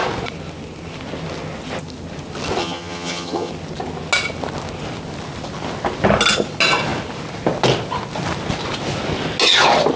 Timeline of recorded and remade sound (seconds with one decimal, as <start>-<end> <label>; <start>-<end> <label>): 0.0-2.6 recorded; 2.6-3.5 remade; 3.5-10.0 recorded